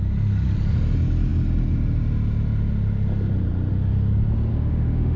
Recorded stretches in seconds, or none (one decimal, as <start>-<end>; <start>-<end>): 0.0-4.5